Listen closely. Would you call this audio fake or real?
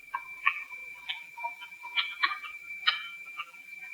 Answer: fake